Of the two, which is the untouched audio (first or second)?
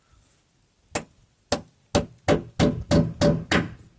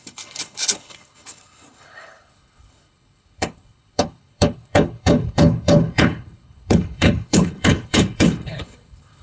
first